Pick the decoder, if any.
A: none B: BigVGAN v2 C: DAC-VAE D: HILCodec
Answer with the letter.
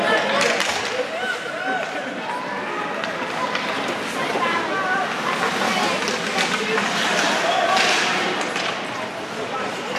A